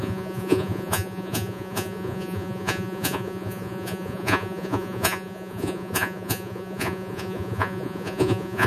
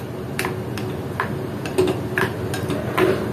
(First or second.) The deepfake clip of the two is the first